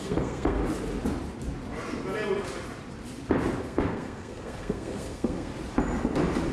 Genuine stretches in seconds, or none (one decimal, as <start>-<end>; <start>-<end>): 0.6-3.6; 5.5-6.5